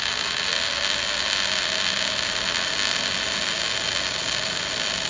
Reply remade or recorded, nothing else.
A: recorded